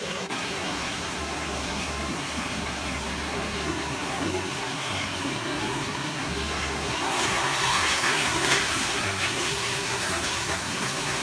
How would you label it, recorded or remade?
remade